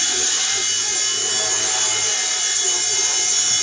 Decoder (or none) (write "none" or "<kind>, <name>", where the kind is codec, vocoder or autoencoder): none